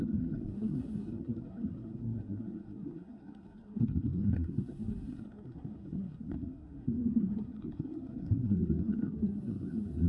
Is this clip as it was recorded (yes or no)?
no